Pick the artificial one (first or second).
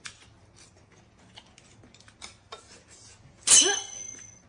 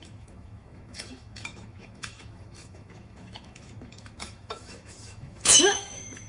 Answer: second